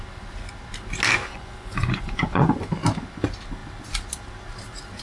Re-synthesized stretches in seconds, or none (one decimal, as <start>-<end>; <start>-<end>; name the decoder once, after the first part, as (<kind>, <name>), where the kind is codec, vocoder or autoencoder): 1.3-2.7 (vocoder, Vocos)